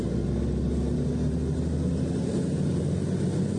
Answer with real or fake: real